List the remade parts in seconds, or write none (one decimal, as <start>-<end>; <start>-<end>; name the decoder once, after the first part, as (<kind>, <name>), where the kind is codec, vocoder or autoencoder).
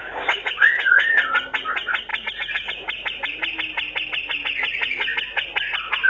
0.0-1.2 (codec, DAC)